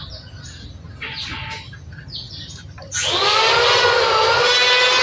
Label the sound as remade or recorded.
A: recorded